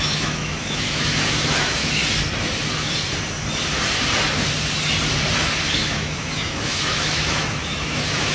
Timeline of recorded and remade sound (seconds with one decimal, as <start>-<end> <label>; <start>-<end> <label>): 0.0-2.0 remade; 2.0-5.7 recorded; 5.7-8.3 remade

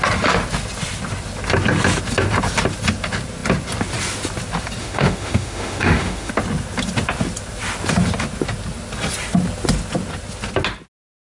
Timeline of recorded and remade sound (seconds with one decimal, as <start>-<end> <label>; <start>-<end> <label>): 0.0-4.8 recorded; 4.8-6.3 remade; 6.3-11.3 recorded

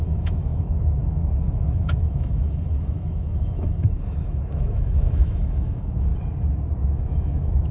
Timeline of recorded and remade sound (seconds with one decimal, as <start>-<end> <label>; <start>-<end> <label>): 0.0-6.1 remade; 6.1-6.8 recorded; 6.8-7.7 remade